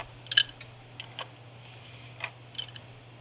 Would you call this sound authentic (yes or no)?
yes